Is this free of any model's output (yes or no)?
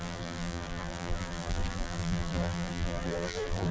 no